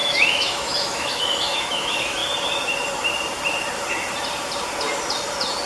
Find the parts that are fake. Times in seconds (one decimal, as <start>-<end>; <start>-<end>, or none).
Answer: 0.0-2.2